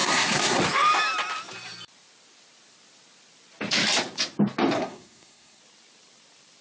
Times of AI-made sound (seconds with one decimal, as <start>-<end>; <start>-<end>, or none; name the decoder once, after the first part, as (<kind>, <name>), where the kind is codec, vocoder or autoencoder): 0.0-0.6 (codec, SNAC); 4.8-5.6